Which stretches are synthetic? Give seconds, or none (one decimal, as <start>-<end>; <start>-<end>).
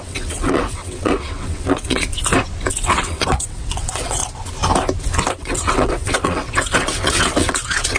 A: 0.0-2.1; 2.7-4.2; 5.3-8.0